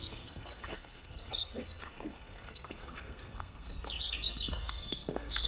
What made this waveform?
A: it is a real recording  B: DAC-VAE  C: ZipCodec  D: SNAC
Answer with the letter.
D